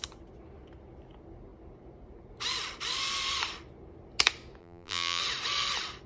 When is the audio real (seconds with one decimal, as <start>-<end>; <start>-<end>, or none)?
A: 0.0-4.6; 5.2-6.1